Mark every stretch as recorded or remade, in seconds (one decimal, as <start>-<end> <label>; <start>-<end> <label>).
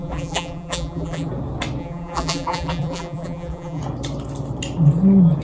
0.0-1.3 remade; 1.3-1.8 recorded; 1.8-3.8 remade; 3.8-5.4 recorded